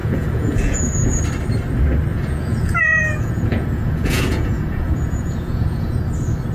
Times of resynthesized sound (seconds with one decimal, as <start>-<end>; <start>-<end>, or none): 0.0-1.2; 2.1-6.0